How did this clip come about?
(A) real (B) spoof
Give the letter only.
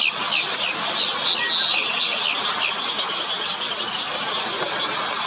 A